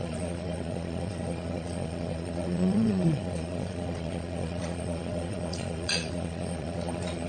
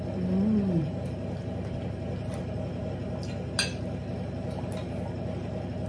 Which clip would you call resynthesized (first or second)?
first